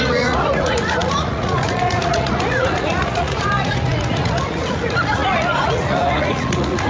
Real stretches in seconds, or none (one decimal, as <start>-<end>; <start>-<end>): none